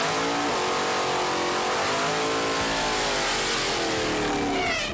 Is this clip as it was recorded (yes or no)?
yes